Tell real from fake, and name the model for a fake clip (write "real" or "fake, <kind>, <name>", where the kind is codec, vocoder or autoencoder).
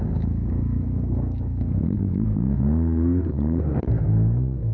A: fake, codec, SNAC